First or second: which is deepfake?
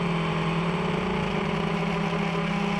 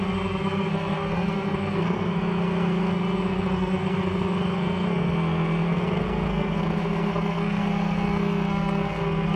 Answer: second